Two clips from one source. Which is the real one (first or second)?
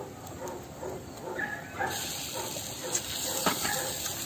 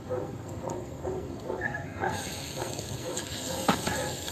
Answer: first